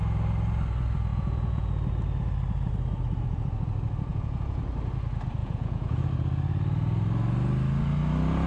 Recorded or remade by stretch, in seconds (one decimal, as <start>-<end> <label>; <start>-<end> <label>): 0.0-1.1 recorded; 1.1-1.7 remade; 1.7-4.1 recorded; 4.1-4.6 remade; 4.6-5.4 recorded; 5.4-6.1 remade; 6.1-8.5 recorded